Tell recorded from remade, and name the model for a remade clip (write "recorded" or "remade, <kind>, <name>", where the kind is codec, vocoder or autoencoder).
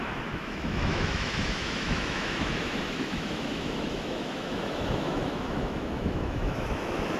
remade, autoencoder, DAC-VAE